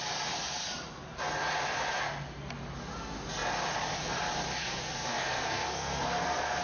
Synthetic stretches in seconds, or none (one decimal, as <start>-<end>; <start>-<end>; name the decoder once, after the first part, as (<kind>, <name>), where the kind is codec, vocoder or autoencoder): 4.6-6.6 (codec, SNAC)